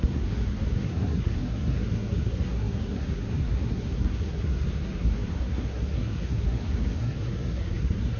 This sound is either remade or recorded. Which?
remade